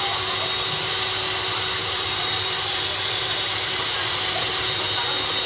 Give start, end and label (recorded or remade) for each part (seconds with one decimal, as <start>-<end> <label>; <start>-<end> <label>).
0.0-1.8 recorded; 1.8-4.6 remade; 4.6-5.5 recorded